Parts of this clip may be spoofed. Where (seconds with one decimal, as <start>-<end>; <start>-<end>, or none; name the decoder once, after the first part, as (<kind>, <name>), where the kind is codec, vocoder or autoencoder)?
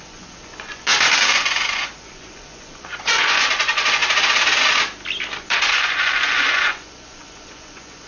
0.0-0.9 (vocoder, Vocos); 1.4-4.0; 5.4-8.1